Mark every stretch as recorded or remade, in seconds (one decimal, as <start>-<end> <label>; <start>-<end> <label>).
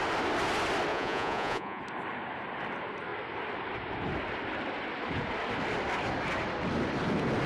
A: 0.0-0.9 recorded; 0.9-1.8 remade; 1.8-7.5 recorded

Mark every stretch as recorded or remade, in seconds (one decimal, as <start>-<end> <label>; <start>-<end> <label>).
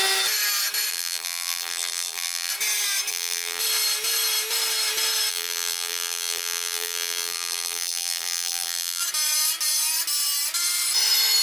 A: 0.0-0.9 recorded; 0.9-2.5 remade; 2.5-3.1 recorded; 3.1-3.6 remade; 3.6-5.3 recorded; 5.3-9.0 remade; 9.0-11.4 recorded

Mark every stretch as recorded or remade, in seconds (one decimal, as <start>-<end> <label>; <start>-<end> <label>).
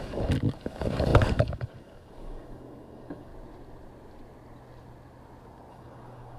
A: 0.0-3.3 remade; 3.3-5.7 recorded; 5.7-6.4 remade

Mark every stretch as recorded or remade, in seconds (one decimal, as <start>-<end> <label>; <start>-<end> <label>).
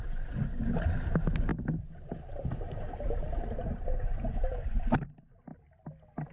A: 0.0-6.3 recorded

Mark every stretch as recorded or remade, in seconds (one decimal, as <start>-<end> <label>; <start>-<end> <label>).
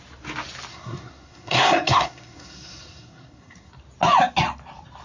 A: 0.0-0.7 recorded; 0.7-3.7 remade; 3.7-5.0 recorded